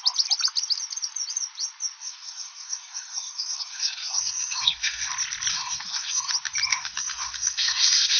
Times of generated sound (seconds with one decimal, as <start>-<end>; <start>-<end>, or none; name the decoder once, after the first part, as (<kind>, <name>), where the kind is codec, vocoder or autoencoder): 2.0-5.1 (codec, SNAC); 5.5-6.3; 6.7-8.2